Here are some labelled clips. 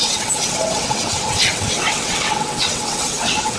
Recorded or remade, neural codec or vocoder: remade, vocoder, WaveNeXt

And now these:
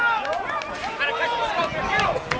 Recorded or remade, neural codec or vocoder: recorded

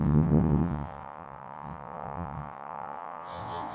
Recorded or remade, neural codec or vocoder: remade, vocoder, WaveNeXt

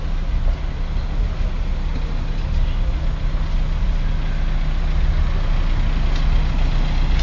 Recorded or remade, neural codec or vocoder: recorded